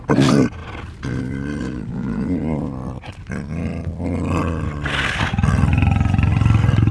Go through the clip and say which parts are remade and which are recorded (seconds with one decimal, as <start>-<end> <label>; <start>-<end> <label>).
0.0-1.6 recorded; 1.6-2.6 remade; 2.6-6.9 recorded